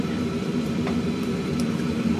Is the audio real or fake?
real